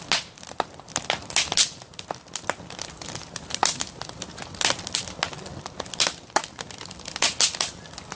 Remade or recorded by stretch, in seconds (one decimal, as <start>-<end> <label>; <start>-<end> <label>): 0.0-8.2 recorded

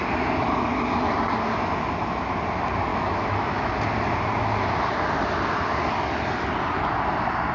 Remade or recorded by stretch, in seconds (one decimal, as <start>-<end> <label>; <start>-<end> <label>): 0.0-2.9 recorded; 2.9-3.7 remade; 3.7-7.5 recorded

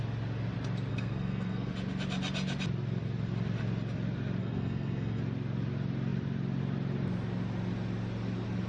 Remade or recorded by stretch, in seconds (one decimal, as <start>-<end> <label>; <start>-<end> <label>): 0.0-0.9 recorded; 0.9-1.7 remade; 1.7-4.4 recorded; 4.4-5.2 remade; 5.2-8.7 recorded

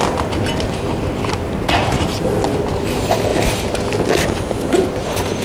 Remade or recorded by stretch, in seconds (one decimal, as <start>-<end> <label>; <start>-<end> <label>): 0.0-1.8 recorded; 1.8-2.3 remade; 2.3-5.4 recorded

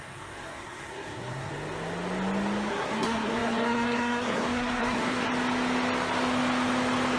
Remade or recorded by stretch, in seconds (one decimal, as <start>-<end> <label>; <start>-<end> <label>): 0.0-1.5 remade; 1.5-2.7 recorded; 2.7-5.3 remade; 5.3-7.2 recorded

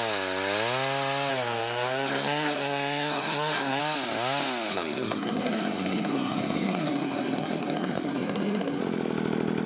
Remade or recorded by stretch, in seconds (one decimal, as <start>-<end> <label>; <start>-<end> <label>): 0.0-1.3 recorded; 1.3-3.8 remade; 3.8-4.7 recorded; 4.7-8.8 remade; 8.8-9.7 recorded

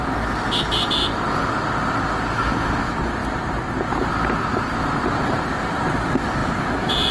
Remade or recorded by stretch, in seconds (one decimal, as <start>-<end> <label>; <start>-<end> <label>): 0.0-6.4 recorded; 6.4-7.1 remade

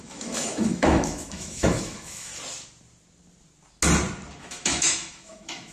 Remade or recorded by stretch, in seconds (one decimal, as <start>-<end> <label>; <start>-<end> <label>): 0.0-2.3 remade; 2.3-4.4 recorded; 4.4-5.7 remade